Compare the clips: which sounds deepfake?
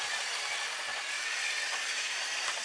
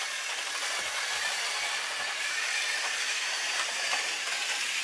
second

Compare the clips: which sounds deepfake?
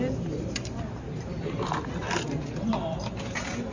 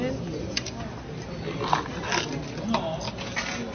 first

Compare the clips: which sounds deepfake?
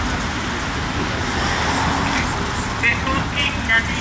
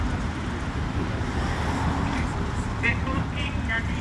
second